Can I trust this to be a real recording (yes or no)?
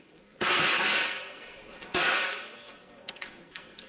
no